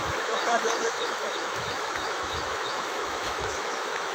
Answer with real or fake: fake